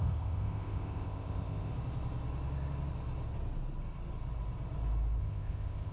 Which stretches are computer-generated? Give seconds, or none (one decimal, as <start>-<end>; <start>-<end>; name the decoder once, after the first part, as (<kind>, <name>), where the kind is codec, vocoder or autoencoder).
0.0-1.7 (codec, ZipCodec); 5.2-5.9